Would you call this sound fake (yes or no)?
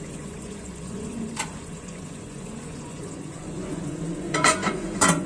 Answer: yes